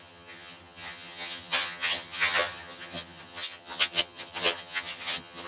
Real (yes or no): no